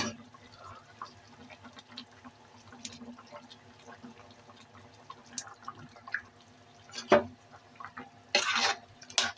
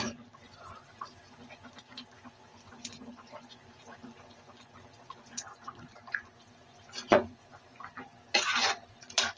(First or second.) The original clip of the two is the first